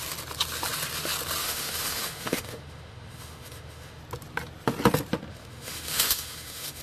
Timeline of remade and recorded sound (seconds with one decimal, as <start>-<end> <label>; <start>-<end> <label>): 0.0-1.4 recorded; 1.4-4.0 remade; 4.0-5.3 recorded; 5.3-6.8 remade